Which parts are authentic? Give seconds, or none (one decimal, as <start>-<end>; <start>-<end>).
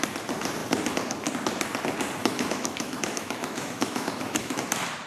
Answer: 0.0-2.2; 4.6-5.1